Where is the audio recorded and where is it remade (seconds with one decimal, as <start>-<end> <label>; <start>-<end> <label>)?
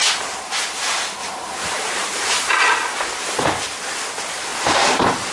0.0-1.2 recorded; 1.2-2.5 remade; 2.5-4.5 recorded; 4.5-5.3 remade